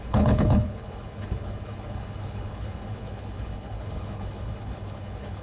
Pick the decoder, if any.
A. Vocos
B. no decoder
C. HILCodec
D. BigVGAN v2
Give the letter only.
C